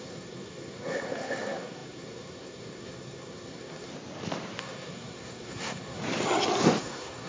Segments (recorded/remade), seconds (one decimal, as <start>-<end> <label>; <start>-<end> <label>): 0.0-3.9 remade; 3.9-4.6 recorded; 4.6-6.0 remade; 6.0-6.8 recorded; 6.8-7.3 remade